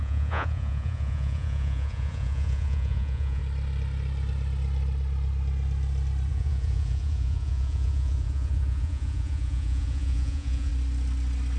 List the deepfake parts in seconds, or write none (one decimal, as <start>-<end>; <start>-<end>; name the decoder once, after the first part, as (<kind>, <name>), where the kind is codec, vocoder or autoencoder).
0.0-3.4 (vocoder, Vocos); 6.3-10.7